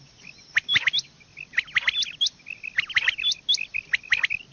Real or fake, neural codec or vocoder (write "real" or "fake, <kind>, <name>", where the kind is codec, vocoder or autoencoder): real